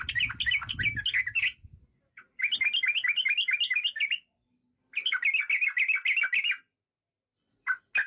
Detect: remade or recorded recorded